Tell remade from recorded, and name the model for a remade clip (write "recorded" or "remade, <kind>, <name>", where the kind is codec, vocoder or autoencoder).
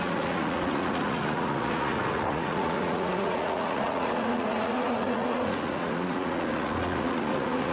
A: remade, vocoder, Vocos